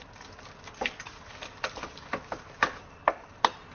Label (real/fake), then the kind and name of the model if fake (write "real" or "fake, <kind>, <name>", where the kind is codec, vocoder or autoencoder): fake, vocoder, BigVGAN v2